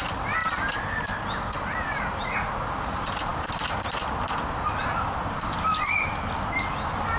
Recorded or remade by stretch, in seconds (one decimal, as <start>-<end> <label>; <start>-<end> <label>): 0.0-7.2 recorded

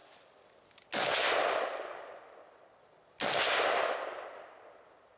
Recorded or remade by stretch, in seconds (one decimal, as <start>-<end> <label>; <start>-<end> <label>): 0.0-5.2 recorded

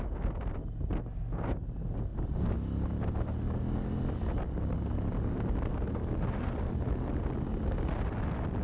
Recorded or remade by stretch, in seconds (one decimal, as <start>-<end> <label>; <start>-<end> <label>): 0.0-8.6 recorded

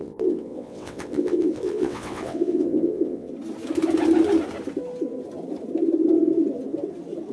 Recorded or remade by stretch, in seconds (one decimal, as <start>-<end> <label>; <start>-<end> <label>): 0.0-3.3 remade; 3.3-7.3 recorded

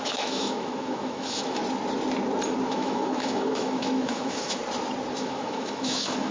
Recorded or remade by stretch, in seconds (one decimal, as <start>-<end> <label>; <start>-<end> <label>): 0.0-1.6 remade; 1.6-2.7 recorded; 2.7-4.6 remade; 4.6-5.1 recorded; 5.1-6.3 remade